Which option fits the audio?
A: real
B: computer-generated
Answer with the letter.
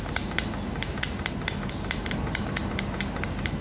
A